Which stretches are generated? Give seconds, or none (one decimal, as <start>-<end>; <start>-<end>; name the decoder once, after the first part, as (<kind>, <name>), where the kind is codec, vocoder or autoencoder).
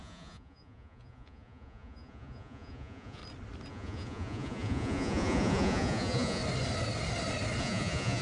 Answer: 0.0-3.2 (vocoder, Vocos); 3.7-6.4; 7.6-8.2